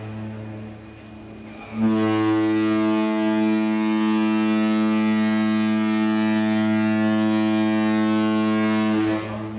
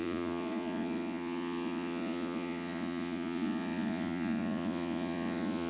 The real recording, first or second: first